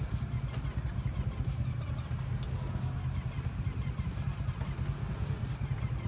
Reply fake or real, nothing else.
real